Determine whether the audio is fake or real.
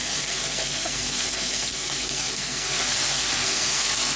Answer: fake